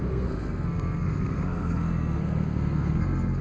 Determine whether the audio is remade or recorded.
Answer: remade